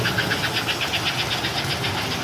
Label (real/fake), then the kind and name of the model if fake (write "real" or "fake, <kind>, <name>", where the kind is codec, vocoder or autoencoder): real